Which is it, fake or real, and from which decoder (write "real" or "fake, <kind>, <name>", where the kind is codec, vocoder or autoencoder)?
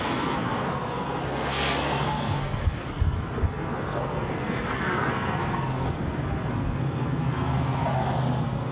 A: fake, codec, SNAC